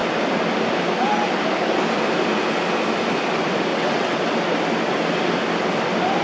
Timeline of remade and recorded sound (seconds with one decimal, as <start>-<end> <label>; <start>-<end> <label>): 0.0-3.7 recorded; 3.7-4.2 remade; 4.2-6.2 recorded

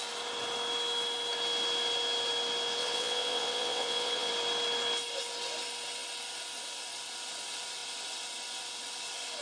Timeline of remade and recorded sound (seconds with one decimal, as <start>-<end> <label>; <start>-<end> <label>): 0.0-2.8 recorded; 2.8-4.3 remade; 4.3-9.4 recorded

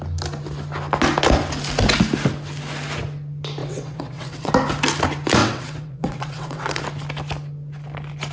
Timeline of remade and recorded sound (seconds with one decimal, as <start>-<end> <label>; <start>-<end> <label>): 0.0-3.6 recorded; 3.6-4.5 remade; 4.5-5.4 recorded; 5.4-6.8 remade; 6.8-8.3 recorded

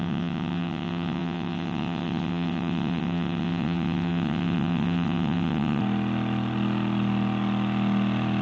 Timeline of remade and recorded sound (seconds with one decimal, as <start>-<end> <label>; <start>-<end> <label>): 0.0-5.8 remade; 5.8-8.4 recorded

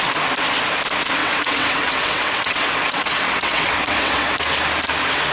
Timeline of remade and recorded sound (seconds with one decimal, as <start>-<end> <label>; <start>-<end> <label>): 0.0-1.2 recorded; 1.2-4.4 remade; 4.4-5.3 recorded

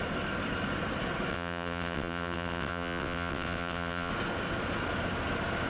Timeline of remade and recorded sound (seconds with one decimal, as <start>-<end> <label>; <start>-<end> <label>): 0.0-1.3 recorded; 1.3-4.1 remade; 4.1-5.7 recorded

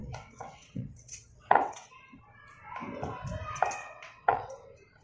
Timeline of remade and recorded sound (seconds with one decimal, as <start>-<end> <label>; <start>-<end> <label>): 0.0-1.9 remade; 1.9-3.8 recorded; 3.8-4.5 remade; 4.5-5.0 recorded